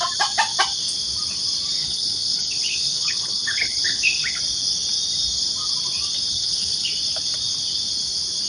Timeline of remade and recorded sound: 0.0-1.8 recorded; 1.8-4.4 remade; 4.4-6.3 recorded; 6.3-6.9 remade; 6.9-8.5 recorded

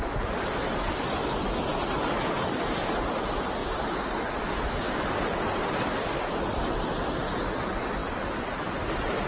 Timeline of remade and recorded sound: 0.0-9.3 recorded

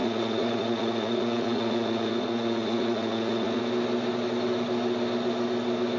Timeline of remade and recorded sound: 0.0-3.6 remade; 3.6-6.0 recorded